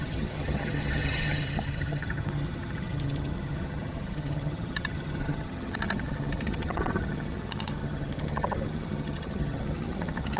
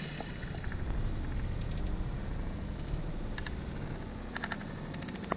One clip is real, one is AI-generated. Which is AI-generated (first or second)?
first